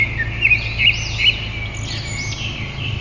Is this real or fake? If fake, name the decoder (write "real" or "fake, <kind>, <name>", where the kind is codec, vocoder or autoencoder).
real